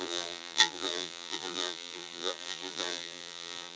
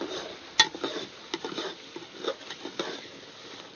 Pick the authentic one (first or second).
second